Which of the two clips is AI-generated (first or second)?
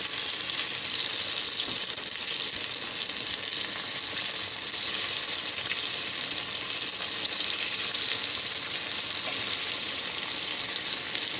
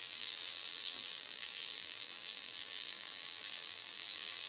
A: second